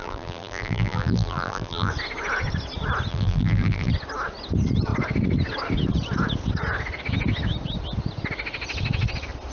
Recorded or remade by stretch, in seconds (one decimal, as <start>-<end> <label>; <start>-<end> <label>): 0.0-1.9 remade; 1.9-3.1 recorded; 3.1-3.9 remade; 3.9-9.5 recorded